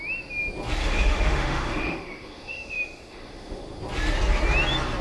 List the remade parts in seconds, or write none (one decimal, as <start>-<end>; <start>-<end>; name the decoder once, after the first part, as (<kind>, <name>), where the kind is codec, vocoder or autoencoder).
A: 0.8-3.8 (autoencoder, DAC-VAE)